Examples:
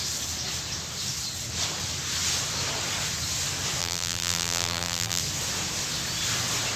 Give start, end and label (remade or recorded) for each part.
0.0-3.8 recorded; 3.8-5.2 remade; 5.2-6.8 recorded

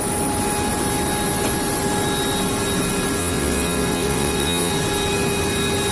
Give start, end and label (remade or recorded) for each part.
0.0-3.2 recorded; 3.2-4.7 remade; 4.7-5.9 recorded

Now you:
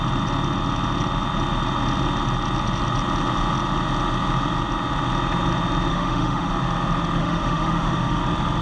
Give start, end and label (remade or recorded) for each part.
0.0-5.9 recorded; 5.9-6.5 remade; 6.5-7.2 recorded; 7.2-8.2 remade; 8.2-8.6 recorded

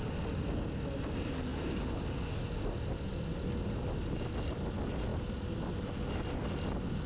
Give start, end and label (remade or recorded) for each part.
0.0-7.1 recorded

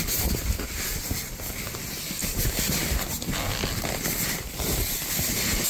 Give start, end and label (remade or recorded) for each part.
0.0-5.7 recorded

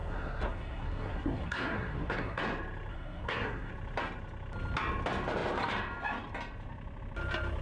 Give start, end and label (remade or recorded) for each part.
0.0-2.4 remade; 2.4-2.9 recorded; 2.9-3.7 remade; 3.7-7.6 recorded

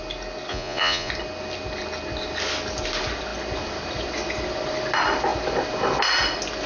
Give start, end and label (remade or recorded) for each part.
0.0-0.5 recorded; 0.5-1.1 remade; 1.1-6.7 recorded

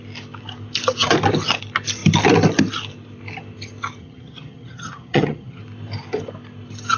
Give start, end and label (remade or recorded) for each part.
0.0-4.0 recorded; 4.0-5.6 remade; 5.6-7.0 recorded